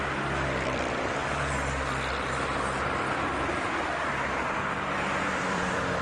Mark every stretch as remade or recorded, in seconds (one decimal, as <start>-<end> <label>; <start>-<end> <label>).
0.0-1.2 remade; 1.2-4.7 recorded; 4.7-6.0 remade